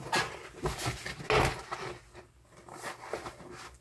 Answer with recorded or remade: recorded